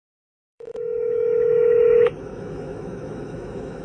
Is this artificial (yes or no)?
yes